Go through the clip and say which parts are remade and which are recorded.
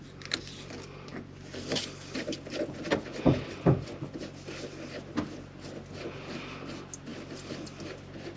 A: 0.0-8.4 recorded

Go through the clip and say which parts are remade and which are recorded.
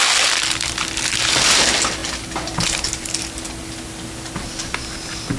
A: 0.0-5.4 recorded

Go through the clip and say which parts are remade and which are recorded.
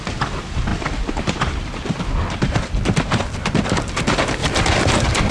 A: 0.0-0.7 recorded; 0.7-3.9 remade; 3.9-4.4 recorded; 4.4-5.3 remade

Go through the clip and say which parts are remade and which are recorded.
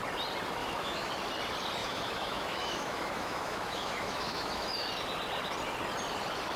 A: 0.0-0.6 recorded; 0.6-1.1 remade; 1.1-1.8 recorded; 1.8-4.9 remade; 4.9-6.6 recorded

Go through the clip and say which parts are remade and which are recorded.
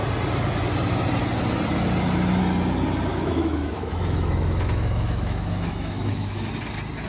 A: 0.0-3.1 recorded; 3.1-6.5 remade; 6.5-7.1 recorded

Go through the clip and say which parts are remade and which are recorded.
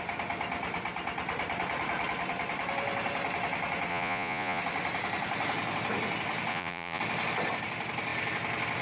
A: 0.0-3.9 recorded; 3.9-4.6 remade; 4.6-6.5 recorded; 6.5-7.0 remade; 7.0-8.8 recorded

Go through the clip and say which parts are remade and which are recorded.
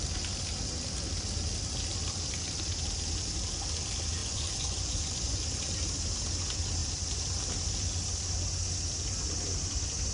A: 0.0-4.2 recorded; 4.2-5.4 remade; 5.4-10.1 recorded